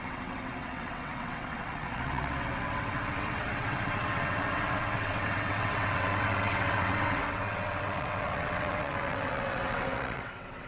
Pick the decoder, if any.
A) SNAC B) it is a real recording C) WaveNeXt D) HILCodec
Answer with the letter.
C